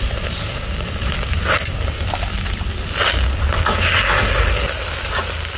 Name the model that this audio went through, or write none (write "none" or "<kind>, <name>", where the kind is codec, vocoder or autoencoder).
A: none